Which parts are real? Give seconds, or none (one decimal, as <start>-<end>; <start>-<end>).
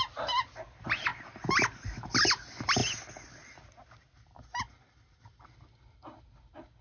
0.0-6.8